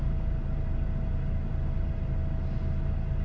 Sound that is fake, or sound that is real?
real